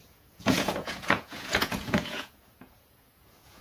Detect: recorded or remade remade